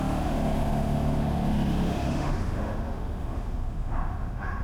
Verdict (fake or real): fake